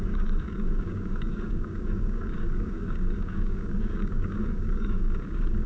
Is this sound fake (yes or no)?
yes